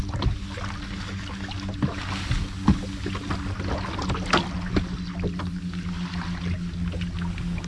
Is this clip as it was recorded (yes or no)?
yes